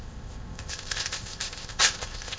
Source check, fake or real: fake